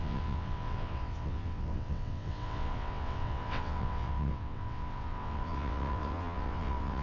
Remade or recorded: remade